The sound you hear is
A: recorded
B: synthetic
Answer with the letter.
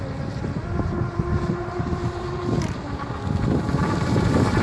B